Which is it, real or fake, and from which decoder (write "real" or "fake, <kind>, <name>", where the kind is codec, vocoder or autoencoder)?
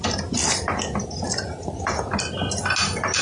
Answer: real